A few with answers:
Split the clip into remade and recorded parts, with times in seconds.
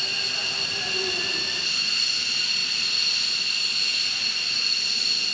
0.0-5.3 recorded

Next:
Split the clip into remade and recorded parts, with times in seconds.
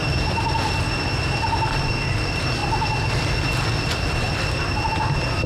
0.0-5.5 recorded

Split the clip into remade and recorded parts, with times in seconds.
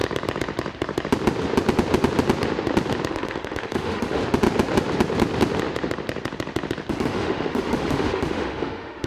0.0-3.1 recorded; 3.1-4.2 remade; 4.2-6.9 recorded; 6.9-9.1 remade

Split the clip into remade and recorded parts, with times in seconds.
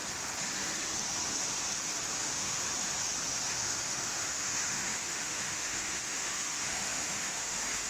0.0-2.2 recorded; 2.2-2.6 remade; 2.6-3.5 recorded; 3.5-7.9 remade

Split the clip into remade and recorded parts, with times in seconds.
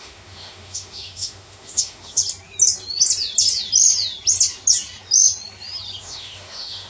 0.0-2.2 remade; 2.2-6.0 recorded; 6.0-6.9 remade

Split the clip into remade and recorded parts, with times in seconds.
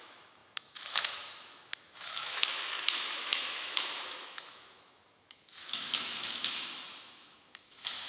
0.0-8.1 remade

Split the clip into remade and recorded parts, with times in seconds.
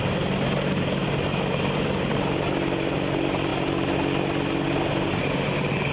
0.0-5.9 recorded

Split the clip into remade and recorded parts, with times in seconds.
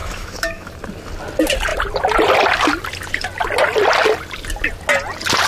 0.0-0.7 remade; 0.7-5.5 recorded